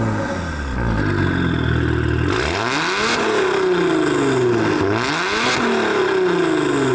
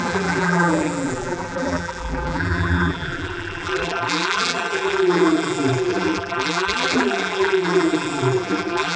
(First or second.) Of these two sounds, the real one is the first